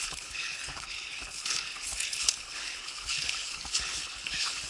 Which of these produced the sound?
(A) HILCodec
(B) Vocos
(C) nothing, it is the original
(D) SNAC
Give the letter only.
A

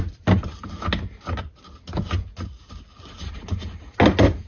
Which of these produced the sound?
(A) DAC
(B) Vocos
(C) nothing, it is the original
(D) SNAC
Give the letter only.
C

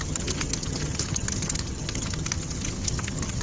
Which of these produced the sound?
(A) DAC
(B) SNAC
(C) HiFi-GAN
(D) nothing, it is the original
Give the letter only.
C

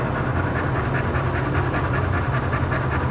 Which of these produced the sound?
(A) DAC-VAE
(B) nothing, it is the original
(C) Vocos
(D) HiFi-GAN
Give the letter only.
B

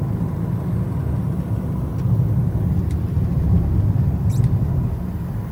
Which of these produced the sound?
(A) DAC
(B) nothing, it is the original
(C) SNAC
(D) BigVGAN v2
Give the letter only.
B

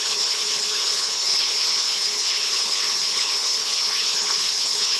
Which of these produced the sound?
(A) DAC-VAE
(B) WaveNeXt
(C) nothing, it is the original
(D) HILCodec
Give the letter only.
D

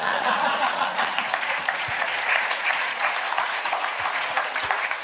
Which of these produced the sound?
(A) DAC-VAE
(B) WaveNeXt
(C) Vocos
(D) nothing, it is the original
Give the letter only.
C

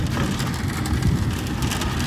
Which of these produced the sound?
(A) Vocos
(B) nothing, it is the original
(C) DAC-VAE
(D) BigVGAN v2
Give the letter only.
B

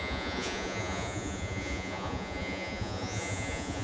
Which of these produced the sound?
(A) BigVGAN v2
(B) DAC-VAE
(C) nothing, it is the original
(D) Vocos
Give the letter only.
D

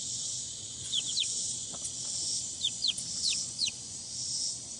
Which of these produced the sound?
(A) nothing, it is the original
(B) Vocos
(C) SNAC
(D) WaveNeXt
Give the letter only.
B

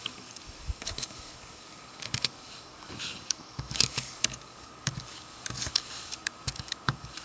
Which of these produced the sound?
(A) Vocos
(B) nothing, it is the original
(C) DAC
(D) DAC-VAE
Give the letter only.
C